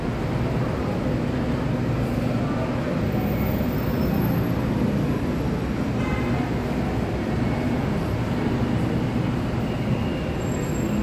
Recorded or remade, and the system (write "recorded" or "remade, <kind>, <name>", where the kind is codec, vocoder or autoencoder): recorded